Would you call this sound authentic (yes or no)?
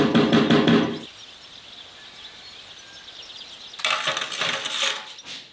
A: yes